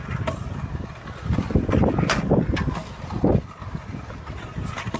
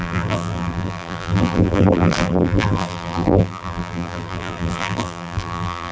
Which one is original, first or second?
first